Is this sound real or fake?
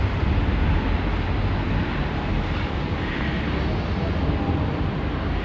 real